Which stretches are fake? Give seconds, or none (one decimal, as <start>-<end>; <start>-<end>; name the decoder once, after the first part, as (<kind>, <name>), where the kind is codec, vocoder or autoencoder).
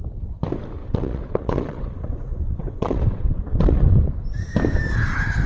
0.8-4.1 (vocoder, WaveNeXt)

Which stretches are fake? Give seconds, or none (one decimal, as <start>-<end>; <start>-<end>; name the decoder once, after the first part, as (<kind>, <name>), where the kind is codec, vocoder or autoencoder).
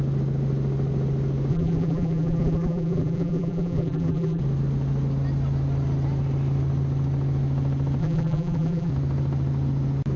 1.5-4.4 (vocoder, BigVGAN v2); 8.0-8.9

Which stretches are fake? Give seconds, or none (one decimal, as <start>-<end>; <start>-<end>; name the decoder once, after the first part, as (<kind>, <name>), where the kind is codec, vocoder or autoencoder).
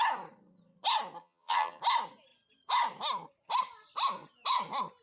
1.2-1.8 (vocoder, HiFi-GAN)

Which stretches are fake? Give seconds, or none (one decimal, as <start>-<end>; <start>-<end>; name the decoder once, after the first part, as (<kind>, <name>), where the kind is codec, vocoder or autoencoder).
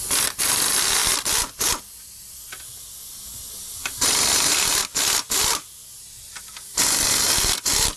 none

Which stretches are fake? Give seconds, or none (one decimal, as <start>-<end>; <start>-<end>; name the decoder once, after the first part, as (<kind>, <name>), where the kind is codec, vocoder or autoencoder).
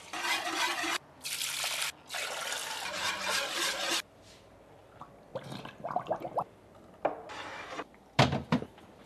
2.6-3.1 (vocoder, BigVGAN v2); 5.3-9.1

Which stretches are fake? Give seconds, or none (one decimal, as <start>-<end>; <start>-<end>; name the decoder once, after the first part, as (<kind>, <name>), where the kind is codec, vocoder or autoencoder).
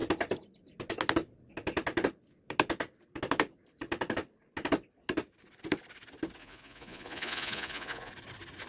6.4-8.1 (vocoder, Vocos)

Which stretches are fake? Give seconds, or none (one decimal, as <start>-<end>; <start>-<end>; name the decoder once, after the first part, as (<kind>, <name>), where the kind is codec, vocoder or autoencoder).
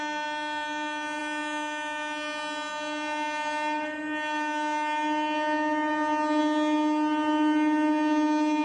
none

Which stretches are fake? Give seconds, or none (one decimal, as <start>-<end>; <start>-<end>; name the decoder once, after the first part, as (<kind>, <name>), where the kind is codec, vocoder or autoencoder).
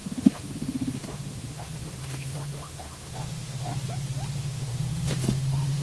0.0-3.7 (autoencoder, DAC-VAE); 4.4-5.8